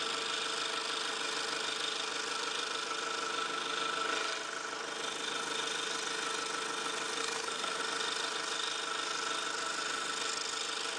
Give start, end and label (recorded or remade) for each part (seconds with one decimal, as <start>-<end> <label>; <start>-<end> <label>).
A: 0.0-7.2 recorded; 7.2-7.8 remade; 7.8-11.0 recorded